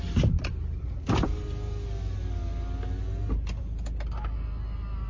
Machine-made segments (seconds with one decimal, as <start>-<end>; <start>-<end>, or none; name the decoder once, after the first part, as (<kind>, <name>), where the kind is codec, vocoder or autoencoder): none